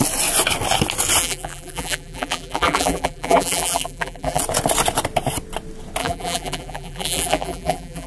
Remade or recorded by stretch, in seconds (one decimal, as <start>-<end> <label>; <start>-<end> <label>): 0.0-1.2 recorded; 1.2-4.4 remade; 4.4-6.0 recorded; 6.0-8.1 remade